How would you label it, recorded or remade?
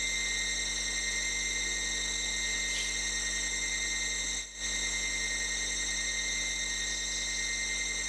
recorded